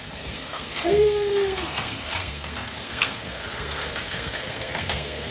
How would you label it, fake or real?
fake